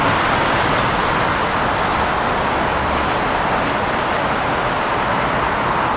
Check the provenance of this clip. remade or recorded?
remade